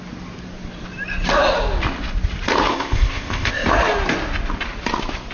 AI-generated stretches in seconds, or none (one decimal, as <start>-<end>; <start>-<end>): 2.7-3.7

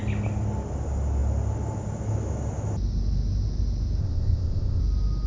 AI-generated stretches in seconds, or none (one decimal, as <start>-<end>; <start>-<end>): 4.0-4.8

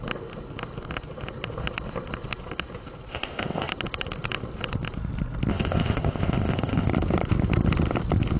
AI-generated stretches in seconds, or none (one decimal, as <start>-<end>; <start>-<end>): 3.1-3.7; 5.5-6.9

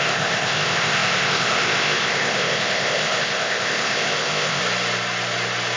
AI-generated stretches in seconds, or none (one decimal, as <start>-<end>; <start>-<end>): 0.0-4.6

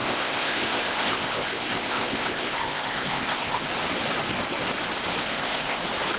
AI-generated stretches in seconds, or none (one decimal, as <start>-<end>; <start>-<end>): 0.0-3.7; 5.2-5.8